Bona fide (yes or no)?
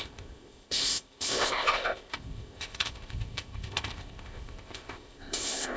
no